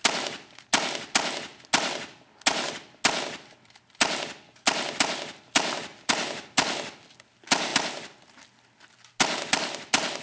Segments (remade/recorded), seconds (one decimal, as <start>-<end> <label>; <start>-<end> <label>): 0.0-10.2 recorded